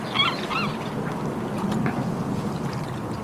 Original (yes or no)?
yes